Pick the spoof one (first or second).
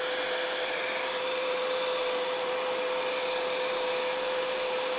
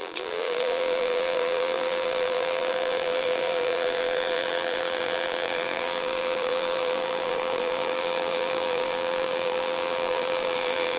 second